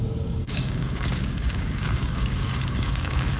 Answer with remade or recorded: remade